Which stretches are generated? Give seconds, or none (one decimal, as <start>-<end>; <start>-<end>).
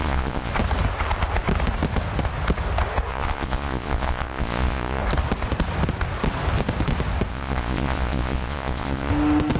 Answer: 0.0-0.5; 3.1-5.0; 7.3-9.1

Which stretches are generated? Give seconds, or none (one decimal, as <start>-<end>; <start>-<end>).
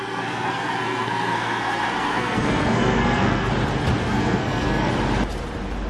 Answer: 0.0-3.5; 4.0-4.9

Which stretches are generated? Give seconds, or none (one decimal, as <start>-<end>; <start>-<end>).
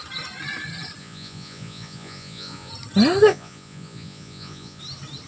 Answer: 1.0-2.7; 3.3-4.8